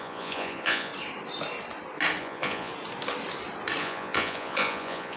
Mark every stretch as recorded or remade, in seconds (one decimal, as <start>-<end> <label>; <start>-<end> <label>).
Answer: 0.0-0.9 remade; 0.9-2.2 recorded; 2.2-2.7 remade; 2.7-3.8 recorded; 3.8-5.2 remade